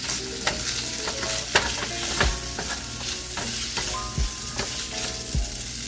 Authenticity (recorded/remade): recorded